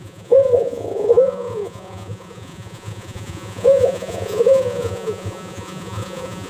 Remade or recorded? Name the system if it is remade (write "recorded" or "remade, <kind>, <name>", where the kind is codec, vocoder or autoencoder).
remade, vocoder, Vocos